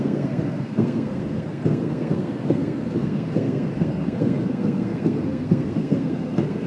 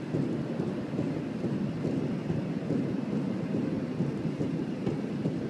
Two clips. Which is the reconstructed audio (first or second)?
first